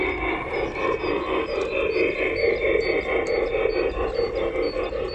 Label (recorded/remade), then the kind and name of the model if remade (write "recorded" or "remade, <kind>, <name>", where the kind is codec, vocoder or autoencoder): recorded